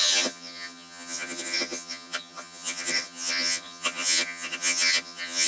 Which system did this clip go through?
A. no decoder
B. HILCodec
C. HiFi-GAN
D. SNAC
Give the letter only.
C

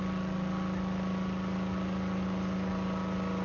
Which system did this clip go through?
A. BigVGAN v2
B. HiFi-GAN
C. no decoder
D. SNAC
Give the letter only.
C